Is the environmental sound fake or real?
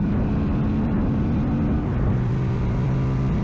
real